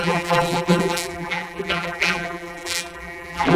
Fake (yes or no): yes